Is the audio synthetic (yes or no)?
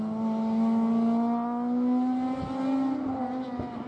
no